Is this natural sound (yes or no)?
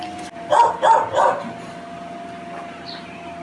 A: yes